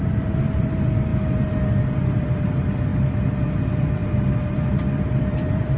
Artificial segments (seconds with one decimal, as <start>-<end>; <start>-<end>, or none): 0.0-1.1; 1.8-2.9; 3.4-4.0; 4.5-5.8